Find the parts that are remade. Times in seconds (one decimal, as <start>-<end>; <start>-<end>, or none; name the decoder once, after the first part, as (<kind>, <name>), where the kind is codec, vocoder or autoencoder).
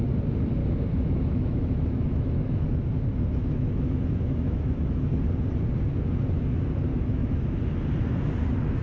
0.6-5.2 (autoencoder, DAC-VAE); 6.9-7.6